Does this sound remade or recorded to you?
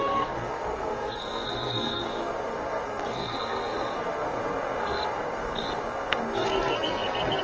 remade